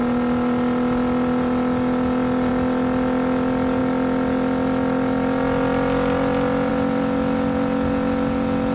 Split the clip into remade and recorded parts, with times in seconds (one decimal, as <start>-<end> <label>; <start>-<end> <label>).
0.0-8.7 recorded